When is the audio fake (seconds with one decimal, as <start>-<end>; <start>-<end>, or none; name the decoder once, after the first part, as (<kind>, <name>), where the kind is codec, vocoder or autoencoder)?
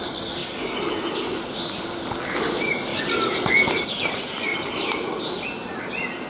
none